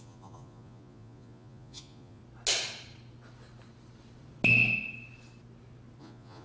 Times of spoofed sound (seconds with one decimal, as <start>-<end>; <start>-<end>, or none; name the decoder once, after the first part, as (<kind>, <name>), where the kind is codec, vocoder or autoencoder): 0.0-2.2 (vocoder, Vocos); 6.0-6.4